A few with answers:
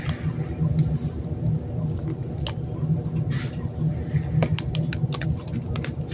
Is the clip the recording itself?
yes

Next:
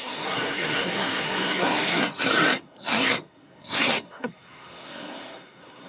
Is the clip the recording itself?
no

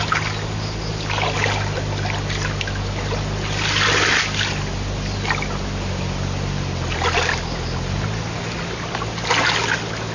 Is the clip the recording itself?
yes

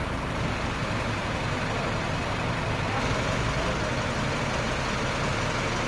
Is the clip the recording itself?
yes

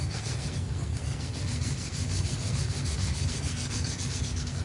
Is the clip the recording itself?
no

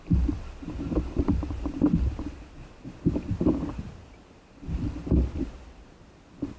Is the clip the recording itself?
yes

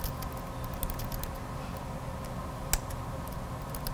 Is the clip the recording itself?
yes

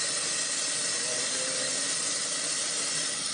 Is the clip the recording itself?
yes